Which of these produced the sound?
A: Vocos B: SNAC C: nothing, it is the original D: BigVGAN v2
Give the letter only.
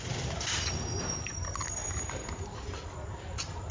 D